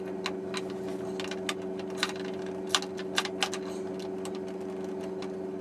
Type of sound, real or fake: real